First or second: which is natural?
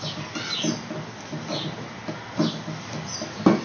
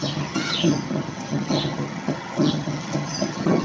first